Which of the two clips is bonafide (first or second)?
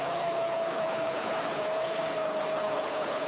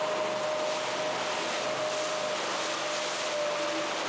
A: second